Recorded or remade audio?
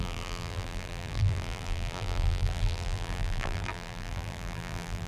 remade